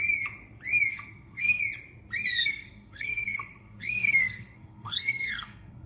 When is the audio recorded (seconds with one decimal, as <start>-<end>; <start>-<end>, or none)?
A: 0.0-0.9; 1.6-2.3